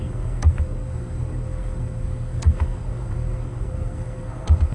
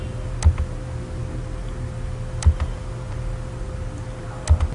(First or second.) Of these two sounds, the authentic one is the second